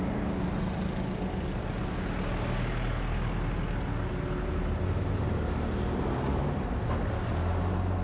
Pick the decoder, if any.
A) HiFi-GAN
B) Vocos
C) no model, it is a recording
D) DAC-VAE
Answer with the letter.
C